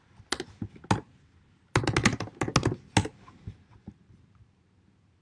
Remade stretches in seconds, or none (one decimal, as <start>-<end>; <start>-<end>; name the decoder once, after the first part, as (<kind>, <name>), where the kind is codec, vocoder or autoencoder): none